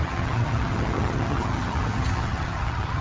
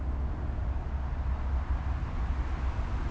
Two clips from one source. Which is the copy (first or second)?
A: first